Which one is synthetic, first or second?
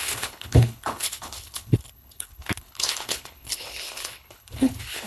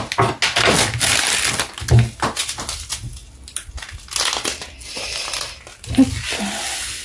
first